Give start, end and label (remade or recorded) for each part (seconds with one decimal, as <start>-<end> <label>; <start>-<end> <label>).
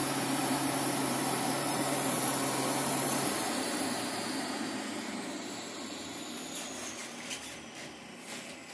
0.0-5.1 remade; 5.1-8.7 recorded